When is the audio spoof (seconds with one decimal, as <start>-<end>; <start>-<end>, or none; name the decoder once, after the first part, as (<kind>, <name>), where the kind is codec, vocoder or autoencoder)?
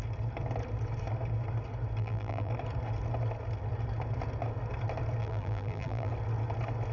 2.0-2.5 (vocoder, BigVGAN v2); 5.2-6.1